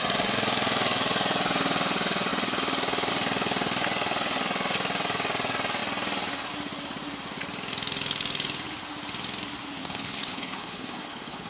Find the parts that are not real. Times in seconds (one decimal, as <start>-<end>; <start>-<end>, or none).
9.8-11.5